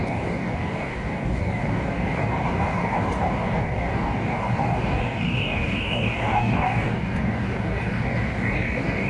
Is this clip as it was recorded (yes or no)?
no